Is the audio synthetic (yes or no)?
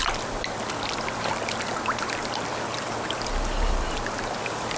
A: no